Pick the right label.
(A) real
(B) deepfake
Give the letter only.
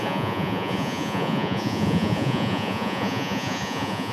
B